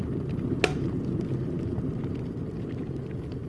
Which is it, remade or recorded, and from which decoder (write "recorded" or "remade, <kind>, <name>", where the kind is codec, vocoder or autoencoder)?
recorded